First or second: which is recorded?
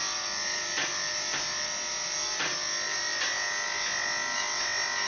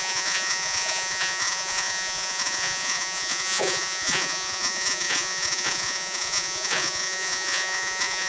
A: first